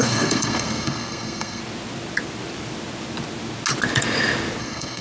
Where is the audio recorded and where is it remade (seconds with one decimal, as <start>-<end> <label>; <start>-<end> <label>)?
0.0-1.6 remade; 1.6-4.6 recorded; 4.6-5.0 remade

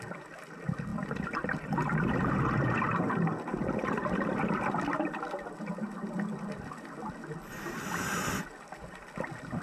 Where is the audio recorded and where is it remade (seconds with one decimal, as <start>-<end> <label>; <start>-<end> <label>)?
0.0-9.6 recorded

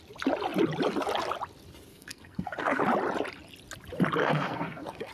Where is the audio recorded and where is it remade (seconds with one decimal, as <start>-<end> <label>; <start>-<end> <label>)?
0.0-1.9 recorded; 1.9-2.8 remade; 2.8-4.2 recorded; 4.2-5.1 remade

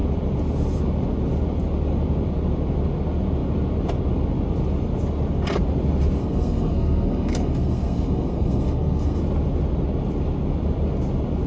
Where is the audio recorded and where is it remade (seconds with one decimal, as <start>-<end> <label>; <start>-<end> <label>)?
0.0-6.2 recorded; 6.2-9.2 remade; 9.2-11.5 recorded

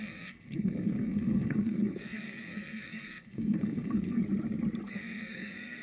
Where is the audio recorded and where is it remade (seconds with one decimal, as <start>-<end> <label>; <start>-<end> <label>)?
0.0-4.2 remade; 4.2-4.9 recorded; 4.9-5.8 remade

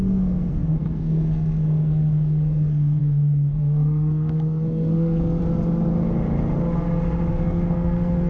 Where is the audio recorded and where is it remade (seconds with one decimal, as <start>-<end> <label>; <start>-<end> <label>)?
0.0-5.4 remade; 5.4-7.3 recorded; 7.3-8.3 remade